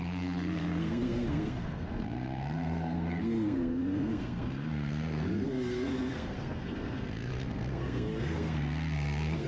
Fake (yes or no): yes